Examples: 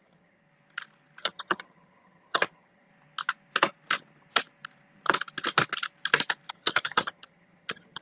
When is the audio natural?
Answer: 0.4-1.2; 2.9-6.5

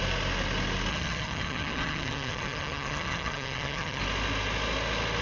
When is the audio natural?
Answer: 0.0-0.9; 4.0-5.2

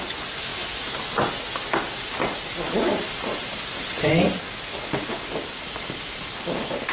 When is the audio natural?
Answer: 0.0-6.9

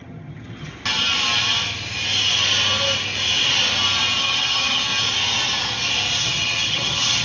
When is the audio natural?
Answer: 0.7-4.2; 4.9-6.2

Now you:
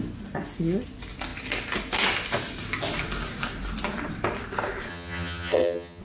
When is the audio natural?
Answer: 0.0-4.9

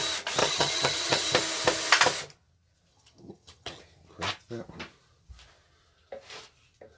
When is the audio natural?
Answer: 0.0-0.4; 1.3-2.9; 3.8-7.0